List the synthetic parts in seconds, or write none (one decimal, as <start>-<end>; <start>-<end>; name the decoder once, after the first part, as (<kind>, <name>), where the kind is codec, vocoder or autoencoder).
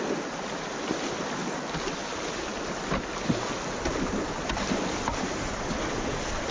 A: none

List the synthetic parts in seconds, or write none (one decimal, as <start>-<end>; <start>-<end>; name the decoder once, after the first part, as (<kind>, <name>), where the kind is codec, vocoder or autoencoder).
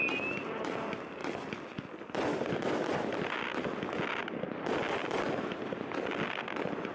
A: none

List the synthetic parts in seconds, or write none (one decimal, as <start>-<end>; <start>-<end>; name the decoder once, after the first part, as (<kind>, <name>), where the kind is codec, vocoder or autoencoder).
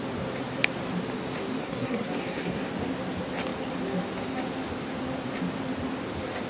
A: 1.6-2.7 (codec, SNAC)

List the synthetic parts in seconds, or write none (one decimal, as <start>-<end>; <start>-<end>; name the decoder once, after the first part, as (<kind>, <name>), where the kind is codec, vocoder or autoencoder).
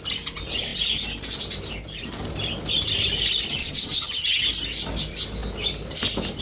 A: 3.6-4.4 (vocoder, HiFi-GAN)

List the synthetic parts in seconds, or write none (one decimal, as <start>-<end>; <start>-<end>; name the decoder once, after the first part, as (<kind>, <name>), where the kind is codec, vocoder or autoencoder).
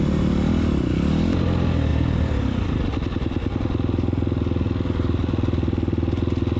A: 1.9-2.8 (vocoder, BigVGAN v2)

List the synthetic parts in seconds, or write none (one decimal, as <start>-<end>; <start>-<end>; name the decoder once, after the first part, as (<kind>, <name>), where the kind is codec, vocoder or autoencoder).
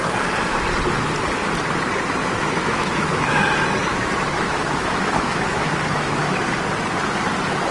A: 2.2-3.4 (autoencoder, DAC-VAE); 3.9-6.5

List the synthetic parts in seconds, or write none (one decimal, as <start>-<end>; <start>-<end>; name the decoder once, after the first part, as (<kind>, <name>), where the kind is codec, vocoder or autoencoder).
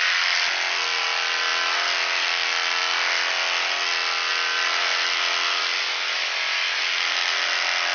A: none